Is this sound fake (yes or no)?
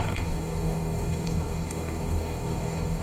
yes